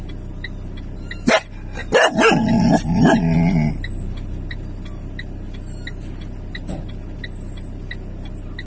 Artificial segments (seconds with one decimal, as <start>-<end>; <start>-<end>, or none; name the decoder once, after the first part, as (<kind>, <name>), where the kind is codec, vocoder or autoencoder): none